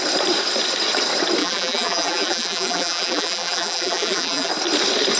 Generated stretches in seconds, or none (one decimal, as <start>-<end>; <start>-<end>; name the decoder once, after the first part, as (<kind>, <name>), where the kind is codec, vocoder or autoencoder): 1.4-4.5 (vocoder, BigVGAN v2)